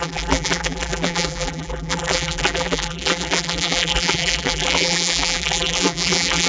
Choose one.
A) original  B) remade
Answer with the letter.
B